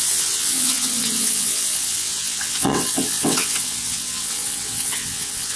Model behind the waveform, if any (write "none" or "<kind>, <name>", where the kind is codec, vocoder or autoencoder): vocoder, WaveNeXt